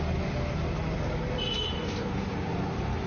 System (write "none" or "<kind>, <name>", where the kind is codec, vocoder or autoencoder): none